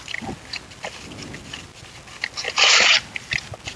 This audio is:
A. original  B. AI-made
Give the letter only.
A